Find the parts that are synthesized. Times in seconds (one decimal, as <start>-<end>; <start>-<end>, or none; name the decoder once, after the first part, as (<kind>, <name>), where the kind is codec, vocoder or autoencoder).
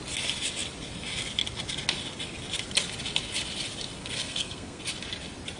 4.0-4.8 (codec, SNAC)